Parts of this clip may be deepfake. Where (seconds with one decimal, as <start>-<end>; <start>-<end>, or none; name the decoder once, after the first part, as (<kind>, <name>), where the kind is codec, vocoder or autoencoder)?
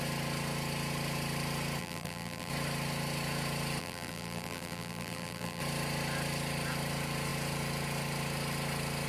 1.8-2.5 (vocoder, BigVGAN v2); 3.8-5.6